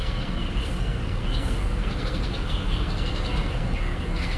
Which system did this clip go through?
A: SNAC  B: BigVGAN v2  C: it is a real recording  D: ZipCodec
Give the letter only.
A